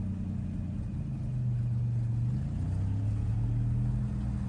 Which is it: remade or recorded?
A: recorded